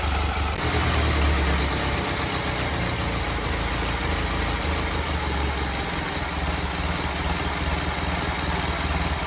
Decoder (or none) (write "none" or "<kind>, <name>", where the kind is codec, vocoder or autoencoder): none